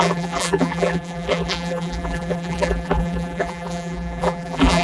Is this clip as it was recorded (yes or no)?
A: no